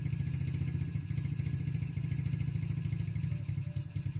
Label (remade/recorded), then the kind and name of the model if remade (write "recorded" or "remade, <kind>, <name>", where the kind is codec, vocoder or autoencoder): recorded